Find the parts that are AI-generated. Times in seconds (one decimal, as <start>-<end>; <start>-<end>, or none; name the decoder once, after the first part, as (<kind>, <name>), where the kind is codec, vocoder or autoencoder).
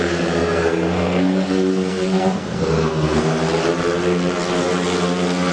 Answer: 0.0-3.3 (codec, SNAC)